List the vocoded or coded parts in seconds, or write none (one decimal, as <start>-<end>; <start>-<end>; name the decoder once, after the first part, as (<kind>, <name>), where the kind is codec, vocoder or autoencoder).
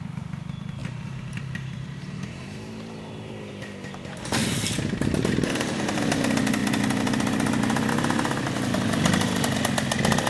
0.8-3.3 (vocoder, BigVGAN v2); 4.4-6.0